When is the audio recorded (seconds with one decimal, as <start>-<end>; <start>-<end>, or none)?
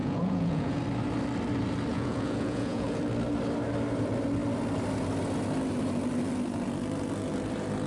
0.8-1.9; 3.0-7.9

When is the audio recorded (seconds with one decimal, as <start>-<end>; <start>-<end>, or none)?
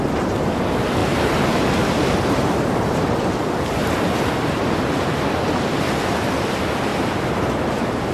0.0-1.0; 3.1-6.9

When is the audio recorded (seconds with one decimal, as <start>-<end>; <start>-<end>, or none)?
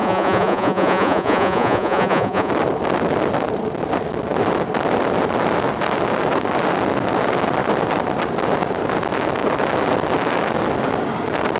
2.5-11.6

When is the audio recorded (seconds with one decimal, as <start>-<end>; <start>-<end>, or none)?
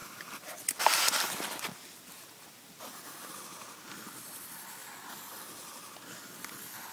0.0-6.9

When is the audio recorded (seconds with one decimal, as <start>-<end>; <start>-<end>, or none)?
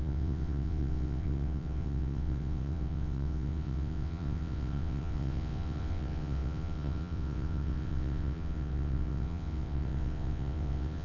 none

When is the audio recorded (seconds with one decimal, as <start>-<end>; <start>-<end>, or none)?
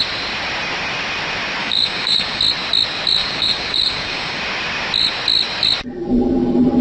0.0-1.6; 2.4-3.2; 4.4-6.8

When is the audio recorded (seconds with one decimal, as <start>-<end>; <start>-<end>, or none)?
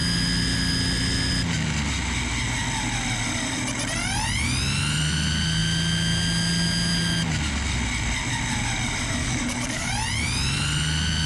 0.0-9.2; 9.9-11.3